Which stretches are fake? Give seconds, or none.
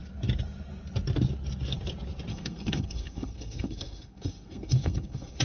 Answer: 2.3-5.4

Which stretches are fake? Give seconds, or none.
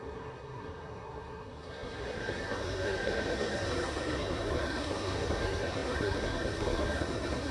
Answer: 0.0-7.5